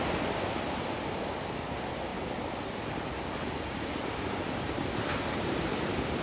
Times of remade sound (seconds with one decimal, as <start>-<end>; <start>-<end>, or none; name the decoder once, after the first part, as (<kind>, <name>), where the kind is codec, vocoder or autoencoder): none